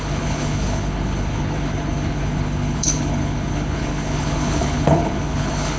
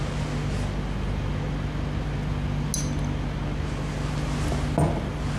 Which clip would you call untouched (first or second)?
second